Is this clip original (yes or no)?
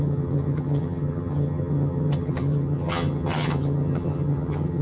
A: no